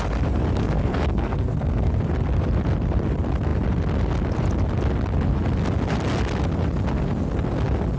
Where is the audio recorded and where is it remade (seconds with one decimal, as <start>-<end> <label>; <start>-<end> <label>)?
0.0-0.6 recorded; 0.6-1.9 remade; 1.9-8.0 recorded